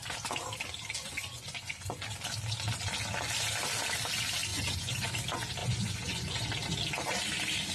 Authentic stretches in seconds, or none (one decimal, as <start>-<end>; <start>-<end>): 0.0-1.0; 2.0-4.5; 5.1-5.6; 6.5-7.7